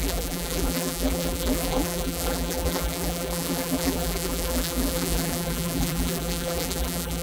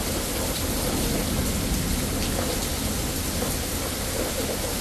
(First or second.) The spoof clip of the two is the first